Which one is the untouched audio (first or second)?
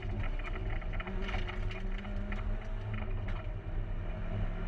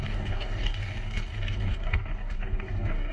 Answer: first